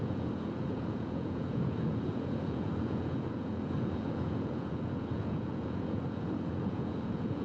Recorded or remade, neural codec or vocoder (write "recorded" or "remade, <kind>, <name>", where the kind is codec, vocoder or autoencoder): remade, vocoder, Vocos